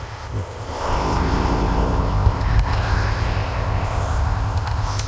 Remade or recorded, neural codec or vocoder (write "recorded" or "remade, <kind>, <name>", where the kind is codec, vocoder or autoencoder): remade, codec, ZipCodec